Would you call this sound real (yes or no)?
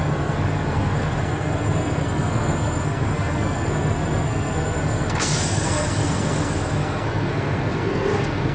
no